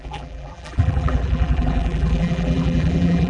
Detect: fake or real fake